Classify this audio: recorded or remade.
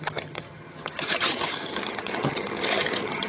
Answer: remade